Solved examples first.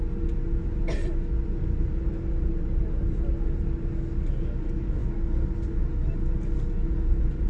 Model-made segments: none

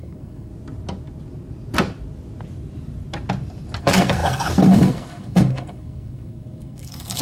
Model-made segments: 0.0-0.5 (codec, SNAC); 3.8-7.2

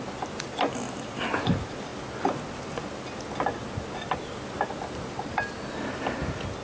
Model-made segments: none